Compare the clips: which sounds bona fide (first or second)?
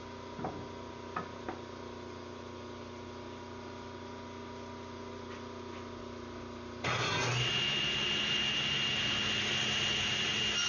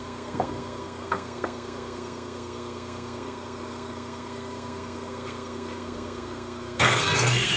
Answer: first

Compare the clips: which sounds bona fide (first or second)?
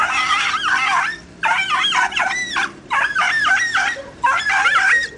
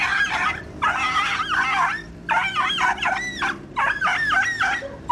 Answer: second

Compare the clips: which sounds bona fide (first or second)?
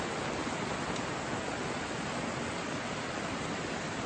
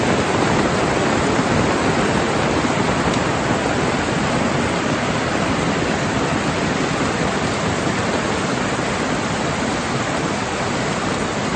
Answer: first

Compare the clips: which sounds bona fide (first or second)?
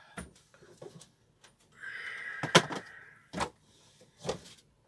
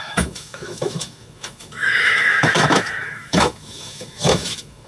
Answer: first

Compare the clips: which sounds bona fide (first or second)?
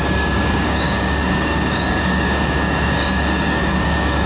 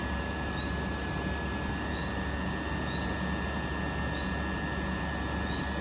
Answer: second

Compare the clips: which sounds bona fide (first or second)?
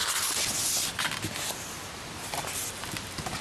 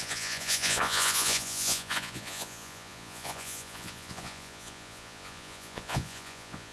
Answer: first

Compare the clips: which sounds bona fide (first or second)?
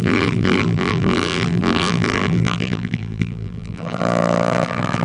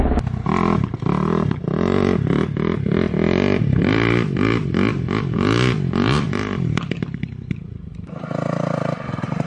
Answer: second